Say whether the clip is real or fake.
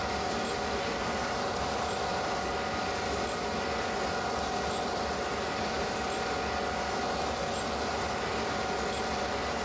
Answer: real